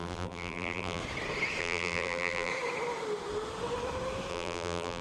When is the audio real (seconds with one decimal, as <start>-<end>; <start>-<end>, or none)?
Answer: 1.0-1.6; 2.5-4.3